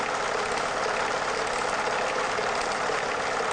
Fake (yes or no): no